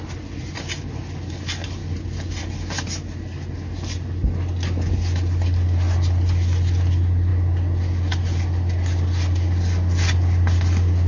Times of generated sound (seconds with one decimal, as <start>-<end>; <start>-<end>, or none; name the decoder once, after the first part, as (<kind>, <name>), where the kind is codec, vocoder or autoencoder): none